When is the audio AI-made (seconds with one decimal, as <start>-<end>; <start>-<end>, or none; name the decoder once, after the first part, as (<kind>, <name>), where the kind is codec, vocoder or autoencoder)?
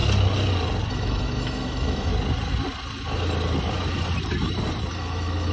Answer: 0.9-2.1 (autoencoder, DAC-VAE); 4.9-5.5